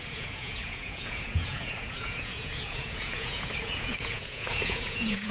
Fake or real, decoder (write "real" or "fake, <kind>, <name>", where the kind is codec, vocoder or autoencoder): fake, vocoder, Vocos